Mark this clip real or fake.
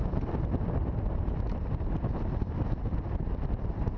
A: fake